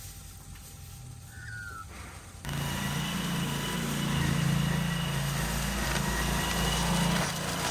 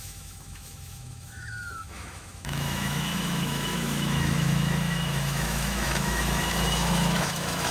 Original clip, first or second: first